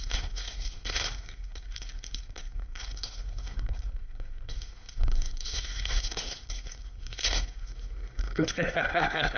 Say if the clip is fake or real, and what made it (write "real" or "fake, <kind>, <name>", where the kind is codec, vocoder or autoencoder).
fake, codec, SNAC